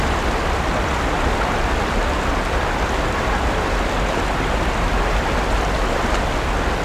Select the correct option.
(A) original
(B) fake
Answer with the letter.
A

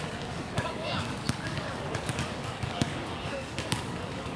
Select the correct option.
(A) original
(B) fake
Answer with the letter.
B